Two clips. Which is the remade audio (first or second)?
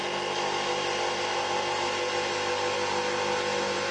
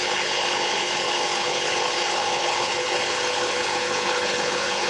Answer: second